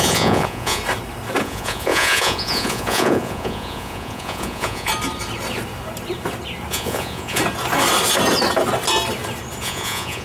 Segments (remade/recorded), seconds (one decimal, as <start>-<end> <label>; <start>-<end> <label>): 0.0-0.8 remade; 0.8-1.4 recorded; 1.4-4.9 remade; 4.9-6.7 recorded; 6.7-7.4 remade; 7.4-9.6 recorded; 9.6-10.2 remade